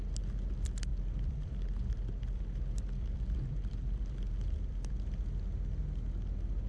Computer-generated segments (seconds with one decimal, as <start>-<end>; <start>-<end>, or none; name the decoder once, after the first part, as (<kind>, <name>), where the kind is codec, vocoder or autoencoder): 0.9-4.9 (vocoder, BigVGAN v2)